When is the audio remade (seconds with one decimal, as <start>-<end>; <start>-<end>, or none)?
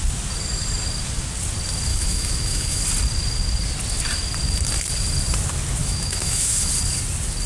1.9-2.8; 5.8-6.7